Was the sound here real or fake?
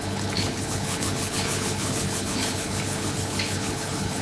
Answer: fake